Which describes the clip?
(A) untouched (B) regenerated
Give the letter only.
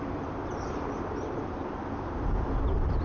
A